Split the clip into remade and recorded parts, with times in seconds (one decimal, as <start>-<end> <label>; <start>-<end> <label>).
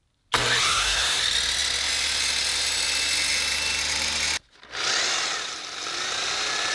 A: 0.0-0.6 recorded; 0.6-1.2 remade; 1.2-6.7 recorded